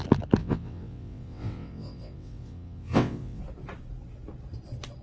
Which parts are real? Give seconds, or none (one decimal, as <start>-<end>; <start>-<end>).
0.0-0.4; 3.4-5.0